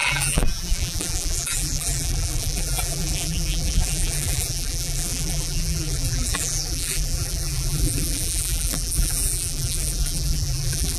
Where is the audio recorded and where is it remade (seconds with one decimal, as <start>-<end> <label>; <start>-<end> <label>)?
0.0-11.0 remade